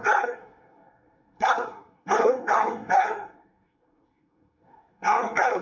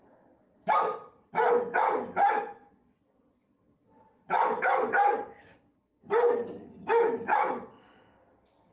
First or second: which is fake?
first